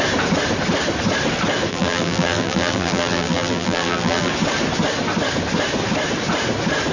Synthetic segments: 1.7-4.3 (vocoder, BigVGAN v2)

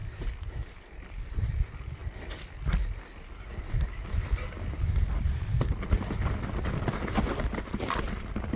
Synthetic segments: none

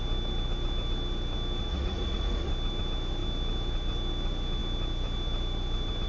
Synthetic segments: 1.7-2.5 (vocoder, Vocos)

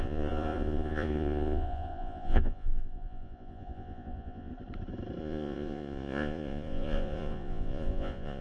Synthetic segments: 0.0-4.5 (vocoder, Vocos); 5.2-8.4

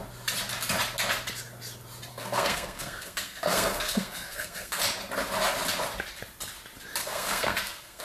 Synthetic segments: 2.1-4.8 (codec, SNAC); 7.0-8.0